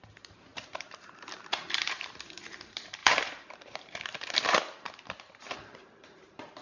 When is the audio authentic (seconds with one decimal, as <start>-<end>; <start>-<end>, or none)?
none

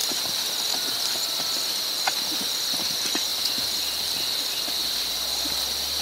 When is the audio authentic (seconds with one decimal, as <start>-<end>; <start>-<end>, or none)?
0.0-6.0

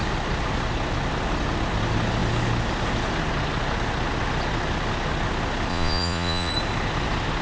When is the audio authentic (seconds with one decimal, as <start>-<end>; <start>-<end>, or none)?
0.0-5.7; 6.5-7.4

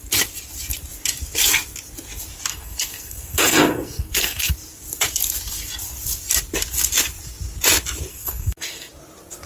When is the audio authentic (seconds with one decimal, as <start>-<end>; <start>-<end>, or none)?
0.0-2.5; 4.5-8.1; 8.9-9.5

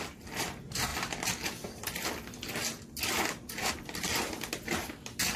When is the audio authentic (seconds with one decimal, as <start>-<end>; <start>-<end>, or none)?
0.0-5.4